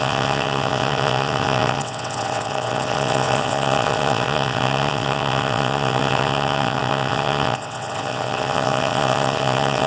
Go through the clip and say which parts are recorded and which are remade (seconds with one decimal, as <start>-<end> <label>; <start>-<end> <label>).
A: 0.0-9.9 remade